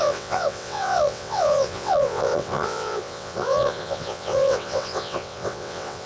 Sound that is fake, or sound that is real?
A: fake